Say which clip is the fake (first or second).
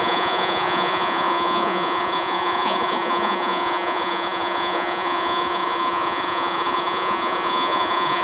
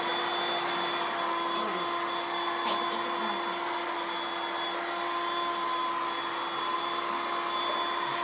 first